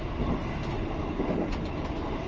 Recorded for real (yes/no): yes